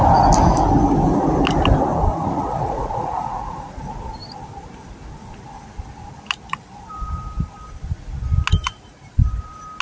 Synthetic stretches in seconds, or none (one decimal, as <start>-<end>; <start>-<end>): 2.1-3.8

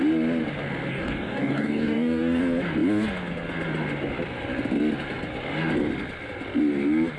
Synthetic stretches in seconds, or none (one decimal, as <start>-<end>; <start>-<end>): 0.9-2.4

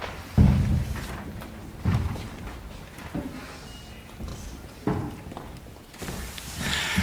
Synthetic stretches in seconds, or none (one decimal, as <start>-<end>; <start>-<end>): 1.6-2.2

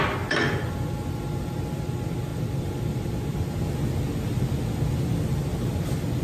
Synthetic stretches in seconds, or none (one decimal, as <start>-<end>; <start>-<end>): none

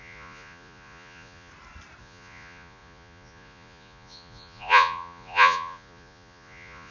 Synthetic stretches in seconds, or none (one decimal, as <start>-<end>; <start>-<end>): 0.0-1.5; 2.0-6.9

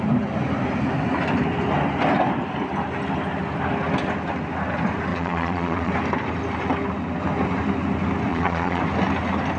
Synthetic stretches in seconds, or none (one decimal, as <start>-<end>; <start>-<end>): 5.1-5.9; 8.3-8.8

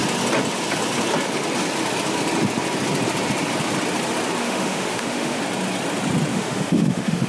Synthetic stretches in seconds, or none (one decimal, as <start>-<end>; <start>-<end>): 4.4-5.4; 6.3-7.3

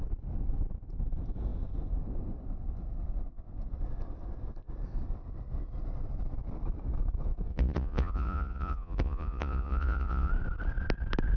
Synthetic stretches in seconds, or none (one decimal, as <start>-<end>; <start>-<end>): 7.5-10.3